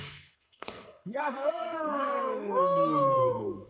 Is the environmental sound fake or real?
fake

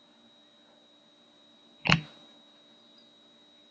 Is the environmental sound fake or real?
real